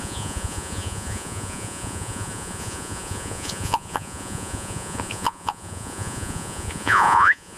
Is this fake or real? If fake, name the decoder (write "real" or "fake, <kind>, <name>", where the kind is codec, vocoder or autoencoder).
fake, vocoder, Vocos